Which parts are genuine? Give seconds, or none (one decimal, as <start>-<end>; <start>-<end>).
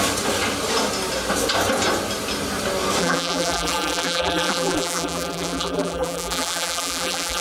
0.0-3.0